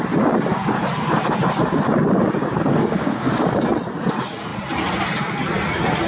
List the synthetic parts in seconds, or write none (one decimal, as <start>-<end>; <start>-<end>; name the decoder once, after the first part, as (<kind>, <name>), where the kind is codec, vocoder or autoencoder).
2.7-3.3 (codec, DAC)